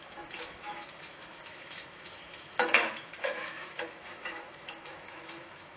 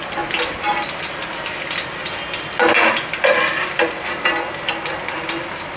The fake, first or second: first